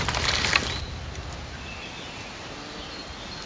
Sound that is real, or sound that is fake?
real